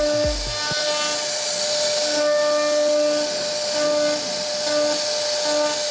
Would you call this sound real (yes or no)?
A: yes